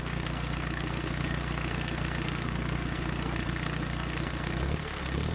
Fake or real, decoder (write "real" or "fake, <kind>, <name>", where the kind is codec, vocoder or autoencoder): fake, codec, SNAC